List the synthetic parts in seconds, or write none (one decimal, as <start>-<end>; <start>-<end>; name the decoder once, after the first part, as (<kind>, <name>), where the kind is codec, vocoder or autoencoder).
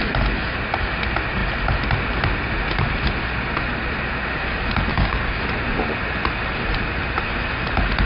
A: 4.9-5.4 (codec, DAC)